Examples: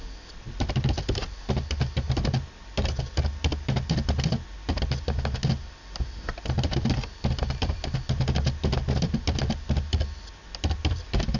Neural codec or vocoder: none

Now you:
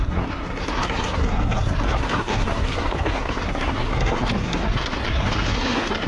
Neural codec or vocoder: codec, SNAC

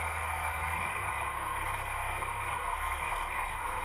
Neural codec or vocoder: codec, SNAC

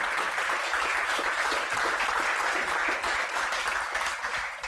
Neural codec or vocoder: none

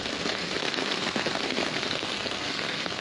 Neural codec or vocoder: codec, SNAC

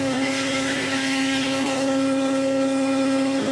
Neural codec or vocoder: codec, SNAC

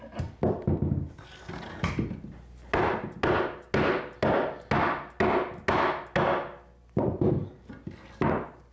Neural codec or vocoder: none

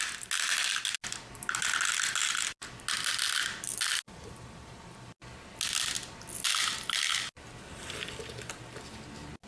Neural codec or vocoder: none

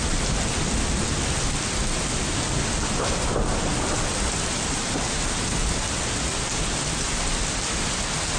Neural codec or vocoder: none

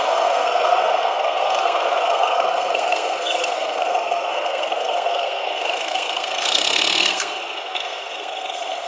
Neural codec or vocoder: codec, SNAC